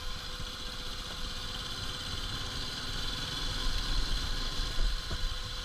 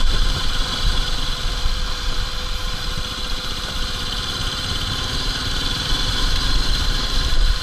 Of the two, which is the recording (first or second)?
first